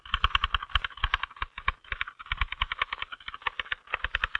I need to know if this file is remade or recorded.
recorded